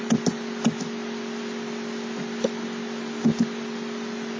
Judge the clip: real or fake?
real